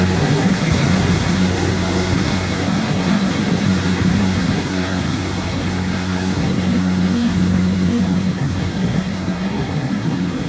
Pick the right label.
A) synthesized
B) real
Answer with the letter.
A